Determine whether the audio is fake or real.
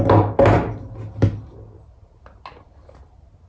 real